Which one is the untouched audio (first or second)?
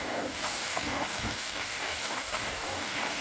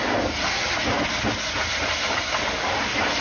second